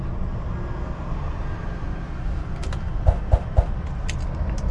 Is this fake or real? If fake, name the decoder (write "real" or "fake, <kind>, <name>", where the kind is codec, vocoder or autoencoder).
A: real